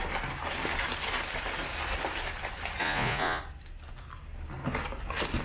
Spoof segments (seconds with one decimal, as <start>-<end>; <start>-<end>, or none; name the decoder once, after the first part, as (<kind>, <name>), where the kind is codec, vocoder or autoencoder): 2.8-3.4 (vocoder, Vocos)